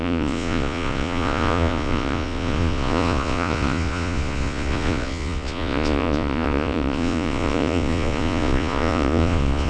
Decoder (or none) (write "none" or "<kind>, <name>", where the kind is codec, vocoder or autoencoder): vocoder, Vocos